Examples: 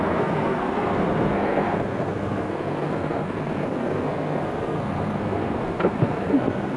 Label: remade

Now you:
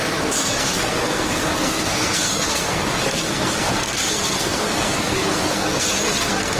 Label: remade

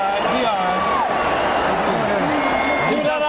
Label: recorded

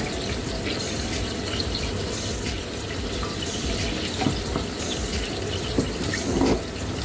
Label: recorded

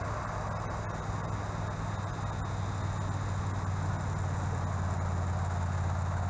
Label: recorded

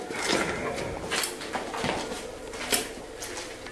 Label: recorded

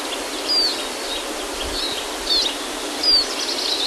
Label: recorded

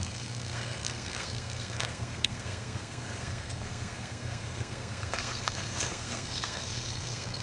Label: remade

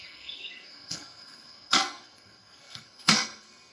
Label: remade